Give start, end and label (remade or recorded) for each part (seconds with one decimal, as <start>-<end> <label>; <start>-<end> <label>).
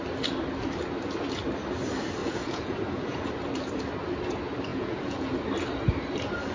0.0-2.2 recorded; 2.2-3.3 remade; 3.3-4.7 recorded; 4.7-5.4 remade; 5.4-6.5 recorded